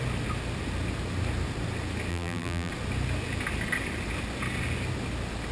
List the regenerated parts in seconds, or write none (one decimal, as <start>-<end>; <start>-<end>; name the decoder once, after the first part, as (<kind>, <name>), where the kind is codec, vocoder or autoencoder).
2.1-2.7 (vocoder, BigVGAN v2)